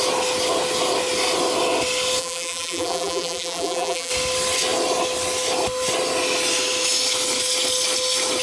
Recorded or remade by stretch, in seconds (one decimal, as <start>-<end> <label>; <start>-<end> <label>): 0.0-2.2 recorded; 2.2-4.1 remade; 4.1-8.4 recorded